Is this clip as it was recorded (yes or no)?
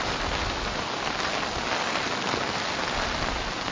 yes